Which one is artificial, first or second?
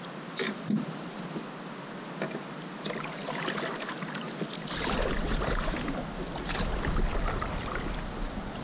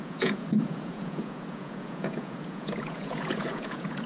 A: second